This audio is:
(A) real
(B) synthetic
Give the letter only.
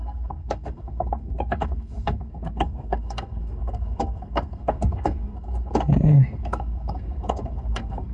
B